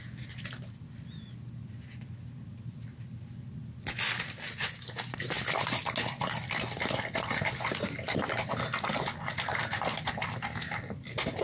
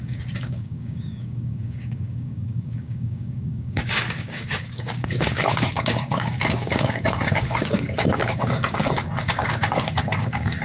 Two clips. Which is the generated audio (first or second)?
second